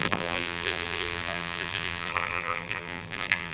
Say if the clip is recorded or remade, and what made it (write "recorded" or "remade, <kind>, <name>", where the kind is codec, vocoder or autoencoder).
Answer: remade, vocoder, BigVGAN v2